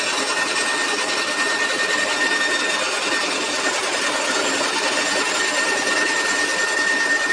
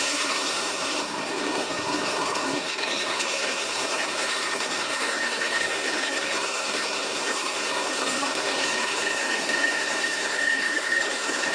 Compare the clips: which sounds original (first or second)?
first